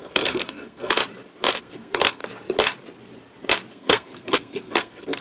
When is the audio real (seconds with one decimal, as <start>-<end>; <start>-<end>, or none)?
1.0-1.6; 2.2-3.7